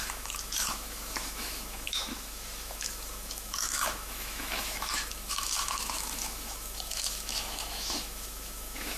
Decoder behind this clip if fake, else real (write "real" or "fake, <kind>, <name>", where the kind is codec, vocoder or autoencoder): fake, autoencoder, DAC-VAE